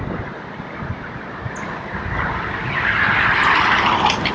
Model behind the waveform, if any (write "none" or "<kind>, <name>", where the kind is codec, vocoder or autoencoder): none